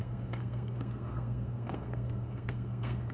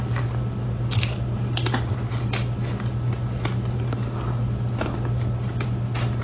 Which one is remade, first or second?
first